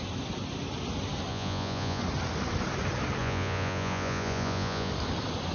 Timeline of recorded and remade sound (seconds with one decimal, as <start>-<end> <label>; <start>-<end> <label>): 0.0-1.3 recorded; 1.3-2.0 remade; 2.0-3.2 recorded; 3.2-4.9 remade; 4.9-5.5 recorded